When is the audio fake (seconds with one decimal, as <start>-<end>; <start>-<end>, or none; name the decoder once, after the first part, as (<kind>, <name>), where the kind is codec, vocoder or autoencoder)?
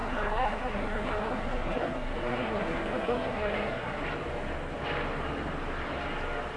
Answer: 0.0-4.0 (codec, SNAC)